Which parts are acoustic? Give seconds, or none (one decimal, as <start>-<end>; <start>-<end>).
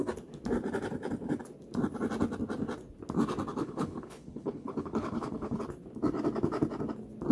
0.0-3.5; 5.6-7.3